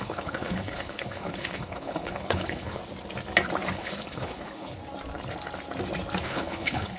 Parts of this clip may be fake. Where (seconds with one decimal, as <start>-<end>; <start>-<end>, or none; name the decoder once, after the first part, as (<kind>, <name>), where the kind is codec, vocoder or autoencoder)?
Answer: 0.0-2.8 (codec, HILCodec); 3.7-4.8; 6.2-7.0